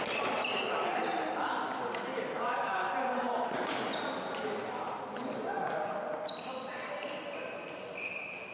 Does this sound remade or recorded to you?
recorded